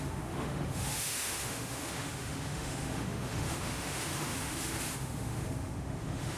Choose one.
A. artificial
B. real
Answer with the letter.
A